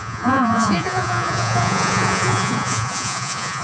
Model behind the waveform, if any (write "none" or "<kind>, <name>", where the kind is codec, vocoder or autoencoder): vocoder, Vocos